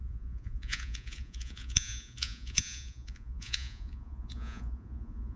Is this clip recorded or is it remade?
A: remade